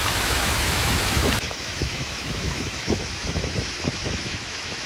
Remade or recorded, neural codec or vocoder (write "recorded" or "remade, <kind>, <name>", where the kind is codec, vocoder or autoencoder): remade, autoencoder, DAC-VAE